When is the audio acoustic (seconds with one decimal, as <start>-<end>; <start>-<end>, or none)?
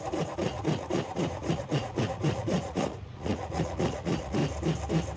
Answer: 4.4-5.2